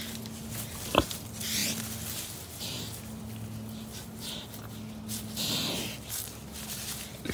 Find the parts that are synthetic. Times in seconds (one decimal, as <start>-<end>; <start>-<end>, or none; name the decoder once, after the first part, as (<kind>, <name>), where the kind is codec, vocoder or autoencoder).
none

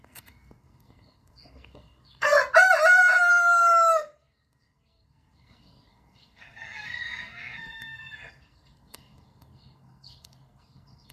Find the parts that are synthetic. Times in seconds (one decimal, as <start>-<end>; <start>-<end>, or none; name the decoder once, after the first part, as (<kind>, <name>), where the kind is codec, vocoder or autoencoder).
0.0-2.3 (codec, SNAC); 3.3-11.1

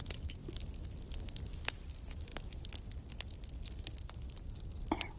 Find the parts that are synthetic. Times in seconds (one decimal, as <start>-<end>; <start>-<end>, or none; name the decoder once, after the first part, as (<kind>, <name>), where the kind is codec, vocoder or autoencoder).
none

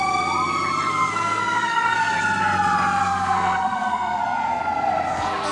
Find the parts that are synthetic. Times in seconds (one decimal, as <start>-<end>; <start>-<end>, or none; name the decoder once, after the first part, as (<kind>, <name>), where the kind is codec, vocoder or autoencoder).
0.9-2.1 (codec, SNAC); 3.0-4.6

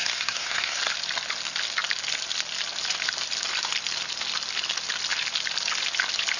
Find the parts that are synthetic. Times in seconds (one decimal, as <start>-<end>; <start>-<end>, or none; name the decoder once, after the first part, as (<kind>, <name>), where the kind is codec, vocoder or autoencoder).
0.0-0.8 (codec, SNAC)

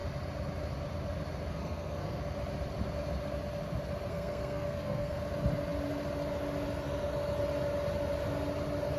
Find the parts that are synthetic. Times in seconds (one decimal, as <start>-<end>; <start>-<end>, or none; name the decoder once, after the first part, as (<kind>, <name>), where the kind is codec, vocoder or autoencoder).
1.5-2.2 (codec, SNAC); 4.1-5.2

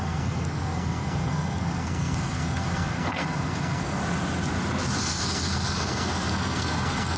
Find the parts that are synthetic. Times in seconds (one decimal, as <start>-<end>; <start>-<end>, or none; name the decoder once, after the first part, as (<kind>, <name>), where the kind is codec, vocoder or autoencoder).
0.0-4.0 (codec, SNAC); 5.0-7.2

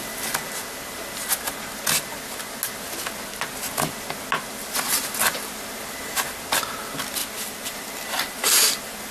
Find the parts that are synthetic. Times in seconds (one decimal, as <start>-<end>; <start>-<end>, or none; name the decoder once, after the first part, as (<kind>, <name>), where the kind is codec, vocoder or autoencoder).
none